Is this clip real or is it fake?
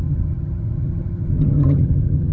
fake